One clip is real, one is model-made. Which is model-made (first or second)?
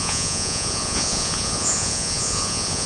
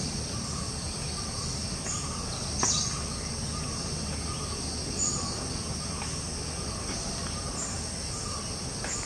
first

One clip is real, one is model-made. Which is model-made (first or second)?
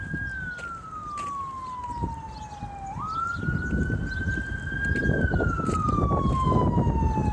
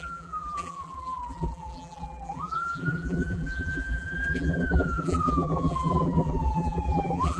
second